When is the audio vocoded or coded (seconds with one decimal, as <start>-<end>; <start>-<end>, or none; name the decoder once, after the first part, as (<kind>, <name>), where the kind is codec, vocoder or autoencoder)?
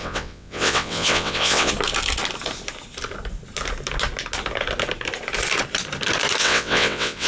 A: 0.0-1.7 (vocoder, WaveNeXt); 6.4-7.3